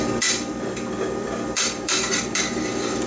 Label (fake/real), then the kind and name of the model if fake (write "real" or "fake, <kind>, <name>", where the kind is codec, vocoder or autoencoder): fake, vocoder, BigVGAN v2